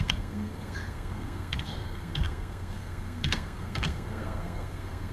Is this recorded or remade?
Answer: remade